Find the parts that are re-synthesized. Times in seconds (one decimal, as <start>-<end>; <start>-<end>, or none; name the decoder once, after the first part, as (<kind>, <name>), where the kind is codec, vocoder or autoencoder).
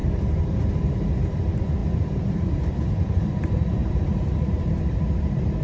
0.0-5.6 (vocoder, BigVGAN v2)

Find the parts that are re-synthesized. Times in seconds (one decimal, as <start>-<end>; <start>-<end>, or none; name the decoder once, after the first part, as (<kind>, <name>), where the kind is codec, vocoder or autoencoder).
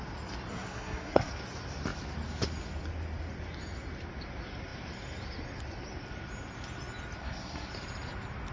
0.5-1.3 (codec, SNAC); 7.2-7.7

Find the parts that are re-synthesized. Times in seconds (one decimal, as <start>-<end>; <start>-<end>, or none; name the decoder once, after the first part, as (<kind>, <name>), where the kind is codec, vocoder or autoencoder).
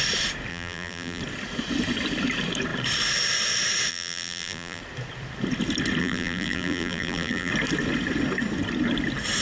0.5-1.2 (vocoder, BigVGAN v2); 3.9-4.8; 6.0-7.5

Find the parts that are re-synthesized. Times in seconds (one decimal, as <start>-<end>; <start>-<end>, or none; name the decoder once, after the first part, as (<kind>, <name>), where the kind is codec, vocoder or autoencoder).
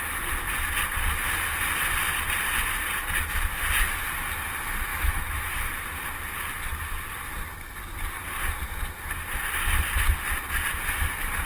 4.9-5.7 (autoencoder, DAC-VAE)